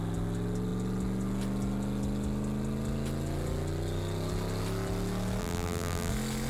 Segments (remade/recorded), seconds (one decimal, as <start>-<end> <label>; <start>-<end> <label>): 0.0-5.4 recorded; 5.4-6.1 remade; 6.1-6.5 recorded